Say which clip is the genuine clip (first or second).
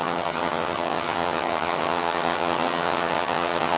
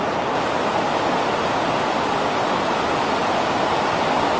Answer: second